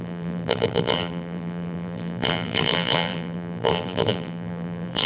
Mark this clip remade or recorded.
remade